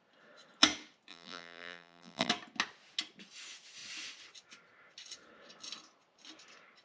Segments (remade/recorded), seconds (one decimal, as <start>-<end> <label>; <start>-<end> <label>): 0.0-1.1 recorded; 1.1-2.3 remade; 2.3-6.8 recorded

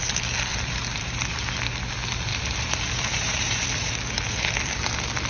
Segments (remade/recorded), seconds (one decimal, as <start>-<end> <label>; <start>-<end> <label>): 0.0-0.5 recorded; 0.5-1.6 remade; 1.6-2.3 recorded; 2.3-3.9 remade; 3.9-5.3 recorded

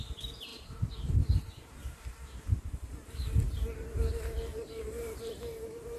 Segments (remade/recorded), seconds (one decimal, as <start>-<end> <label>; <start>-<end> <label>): 0.0-0.5 recorded; 0.5-4.1 remade; 4.1-4.5 recorded; 4.5-6.0 remade